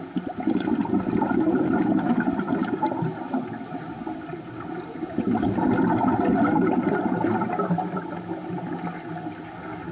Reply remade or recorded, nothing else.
recorded